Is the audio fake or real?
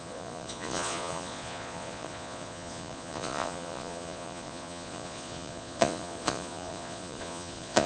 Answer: fake